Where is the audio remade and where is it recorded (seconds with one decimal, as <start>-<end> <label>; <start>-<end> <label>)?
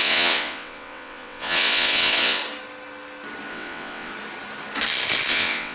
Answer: 0.0-2.4 remade; 2.4-3.5 recorded; 3.5-4.1 remade; 4.1-5.3 recorded; 5.3-5.7 remade